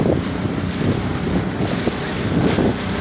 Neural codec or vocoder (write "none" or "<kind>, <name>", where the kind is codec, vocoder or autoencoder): vocoder, BigVGAN v2